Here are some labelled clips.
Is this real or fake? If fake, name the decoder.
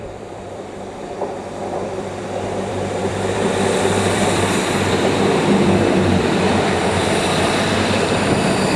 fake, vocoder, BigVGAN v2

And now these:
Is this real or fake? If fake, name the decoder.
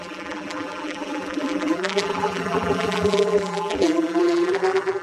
fake, vocoder, BigVGAN v2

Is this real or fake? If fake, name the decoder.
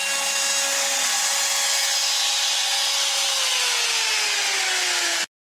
real